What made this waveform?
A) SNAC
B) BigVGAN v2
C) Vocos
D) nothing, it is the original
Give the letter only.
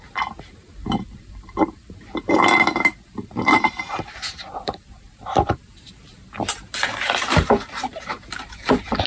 B